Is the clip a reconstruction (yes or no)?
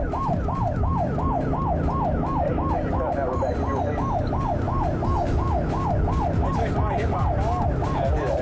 no